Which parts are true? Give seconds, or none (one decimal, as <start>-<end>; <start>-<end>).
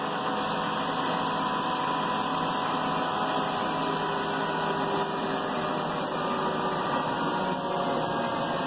0.0-8.7